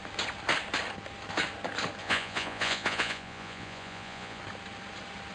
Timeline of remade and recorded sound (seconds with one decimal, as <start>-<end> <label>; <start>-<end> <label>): 0.0-2.0 recorded; 2.0-4.4 remade; 4.4-5.3 recorded